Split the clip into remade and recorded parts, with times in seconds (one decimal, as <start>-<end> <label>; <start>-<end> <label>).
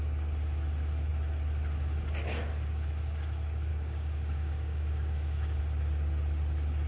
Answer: 0.0-3.7 recorded; 3.7-5.6 remade; 5.6-6.9 recorded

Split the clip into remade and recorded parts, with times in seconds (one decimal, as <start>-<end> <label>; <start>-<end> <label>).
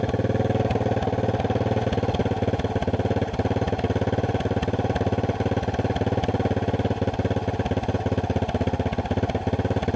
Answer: 0.0-10.0 recorded